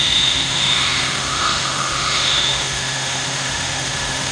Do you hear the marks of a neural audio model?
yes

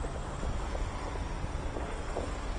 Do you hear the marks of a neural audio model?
no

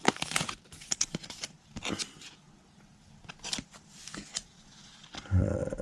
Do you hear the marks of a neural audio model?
yes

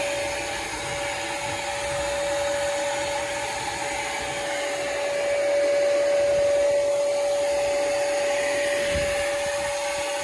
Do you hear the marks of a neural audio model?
no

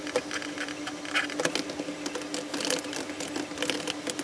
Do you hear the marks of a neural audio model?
no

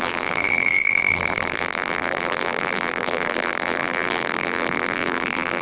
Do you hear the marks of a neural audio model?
yes